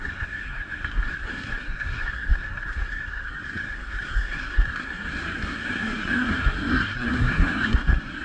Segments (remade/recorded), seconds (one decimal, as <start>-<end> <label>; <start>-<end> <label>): 0.0-8.2 remade